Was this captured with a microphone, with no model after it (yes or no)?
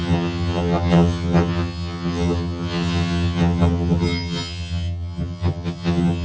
no